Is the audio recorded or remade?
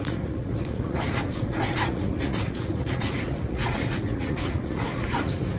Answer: remade